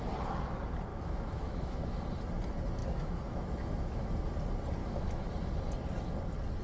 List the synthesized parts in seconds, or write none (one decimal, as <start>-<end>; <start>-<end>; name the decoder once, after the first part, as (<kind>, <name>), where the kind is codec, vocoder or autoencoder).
0.9-2.0 (autoencoder, DAC-VAE); 2.8-4.1; 4.8-5.3